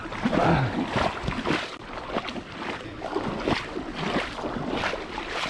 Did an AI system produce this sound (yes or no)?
no